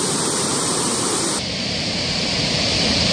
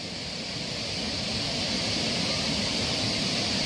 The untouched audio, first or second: second